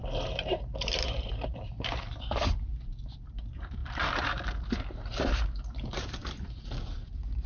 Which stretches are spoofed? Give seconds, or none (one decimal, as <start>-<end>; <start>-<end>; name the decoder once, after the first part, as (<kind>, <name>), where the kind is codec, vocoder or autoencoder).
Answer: 0.0-7.5 (vocoder, BigVGAN v2)